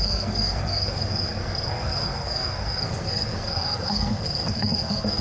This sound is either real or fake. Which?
fake